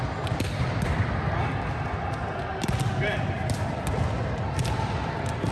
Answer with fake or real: real